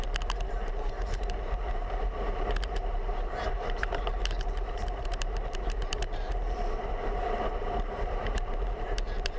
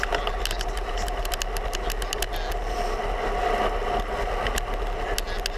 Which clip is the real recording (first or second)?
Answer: second